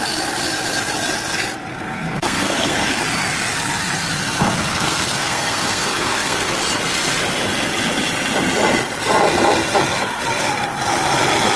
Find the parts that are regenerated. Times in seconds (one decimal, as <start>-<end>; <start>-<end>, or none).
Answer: 1.7-3.0; 4.4-6.5